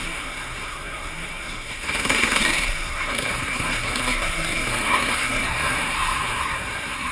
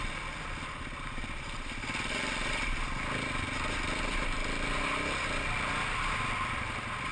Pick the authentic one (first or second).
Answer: second